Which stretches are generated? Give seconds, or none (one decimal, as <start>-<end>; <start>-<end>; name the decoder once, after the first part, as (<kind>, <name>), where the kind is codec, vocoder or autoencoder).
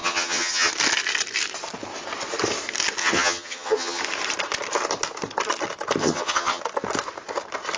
0.0-0.7 (vocoder, HiFi-GAN); 3.0-4.0; 6.0-6.6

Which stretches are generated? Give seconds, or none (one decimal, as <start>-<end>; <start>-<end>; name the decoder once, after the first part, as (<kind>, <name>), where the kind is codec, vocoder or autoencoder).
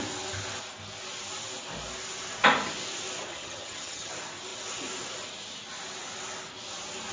3.3-4.1 (vocoder, HiFi-GAN)